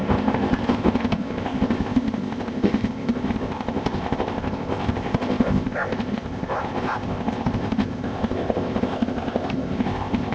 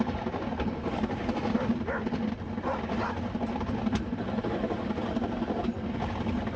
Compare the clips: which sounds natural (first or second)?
second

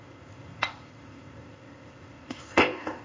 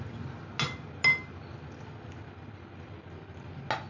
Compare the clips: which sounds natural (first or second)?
second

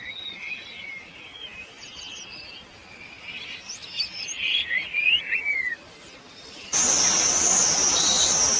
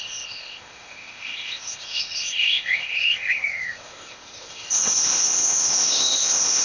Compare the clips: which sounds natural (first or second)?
first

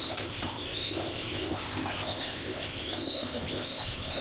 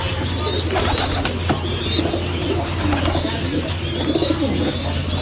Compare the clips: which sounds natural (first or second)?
second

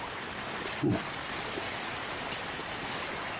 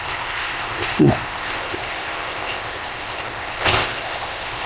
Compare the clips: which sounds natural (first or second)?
first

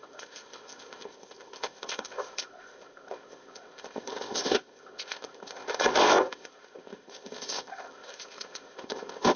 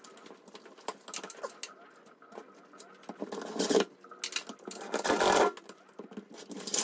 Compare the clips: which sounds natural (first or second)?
second